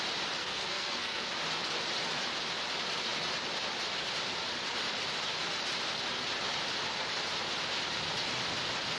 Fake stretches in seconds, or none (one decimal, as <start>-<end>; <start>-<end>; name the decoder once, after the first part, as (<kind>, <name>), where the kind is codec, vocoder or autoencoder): 0.4-1.3 (codec, SNAC)